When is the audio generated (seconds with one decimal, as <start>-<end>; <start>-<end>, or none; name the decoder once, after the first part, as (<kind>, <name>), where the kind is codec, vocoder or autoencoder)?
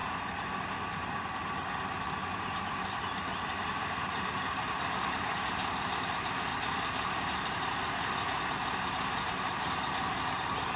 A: none